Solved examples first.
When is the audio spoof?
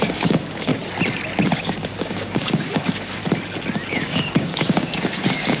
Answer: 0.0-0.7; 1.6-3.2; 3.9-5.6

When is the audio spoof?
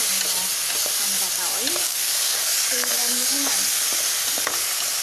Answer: 1.8-3.5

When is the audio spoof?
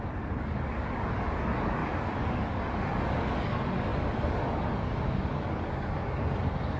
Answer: 0.0-6.8